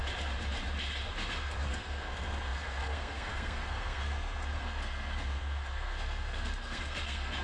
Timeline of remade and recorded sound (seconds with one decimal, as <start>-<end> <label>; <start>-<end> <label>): 0.0-1.3 recorded; 1.3-7.4 remade